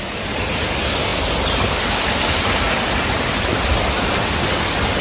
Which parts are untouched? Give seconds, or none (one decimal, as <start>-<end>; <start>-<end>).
0.0-5.0